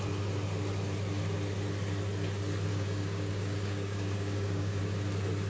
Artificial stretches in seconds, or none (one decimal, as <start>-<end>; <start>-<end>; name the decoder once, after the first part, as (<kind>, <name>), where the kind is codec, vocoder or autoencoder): 2.7-4.8 (codec, DAC)